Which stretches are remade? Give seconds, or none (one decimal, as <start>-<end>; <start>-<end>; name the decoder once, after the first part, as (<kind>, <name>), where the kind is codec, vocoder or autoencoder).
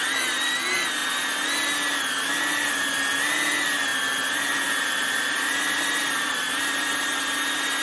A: none